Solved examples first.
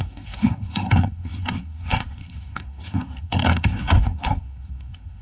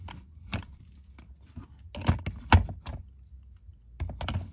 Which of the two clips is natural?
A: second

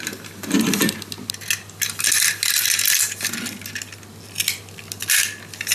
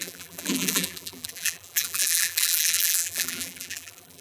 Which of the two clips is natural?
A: first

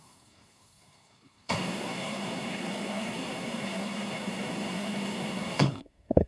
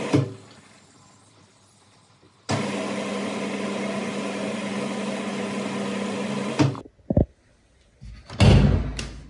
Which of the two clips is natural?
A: second